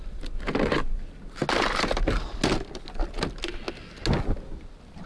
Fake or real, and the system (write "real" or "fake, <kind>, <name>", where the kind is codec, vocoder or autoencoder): real